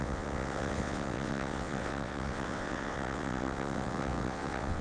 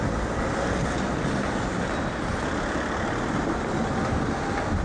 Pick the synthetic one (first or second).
first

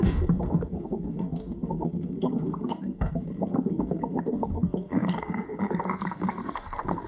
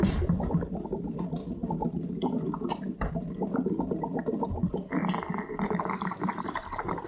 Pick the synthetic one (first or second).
first